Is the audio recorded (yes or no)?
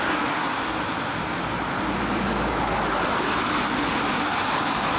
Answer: yes